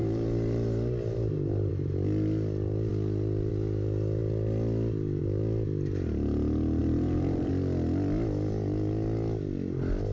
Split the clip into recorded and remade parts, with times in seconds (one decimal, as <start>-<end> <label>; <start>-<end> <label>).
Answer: 0.0-1.7 remade; 1.7-6.8 recorded; 6.8-7.5 remade; 7.5-10.1 recorded